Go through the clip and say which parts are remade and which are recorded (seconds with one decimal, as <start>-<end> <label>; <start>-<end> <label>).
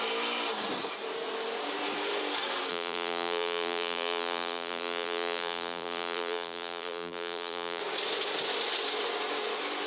0.0-2.7 recorded; 2.7-7.8 remade; 7.8-9.9 recorded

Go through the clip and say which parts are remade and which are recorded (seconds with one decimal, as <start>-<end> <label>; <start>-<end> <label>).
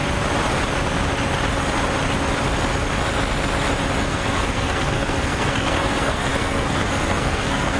0.0-4.0 recorded; 4.0-7.8 remade